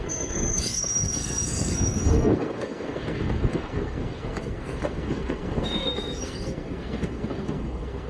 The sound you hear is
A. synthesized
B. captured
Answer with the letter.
A